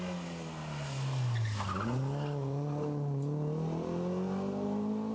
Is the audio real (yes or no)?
yes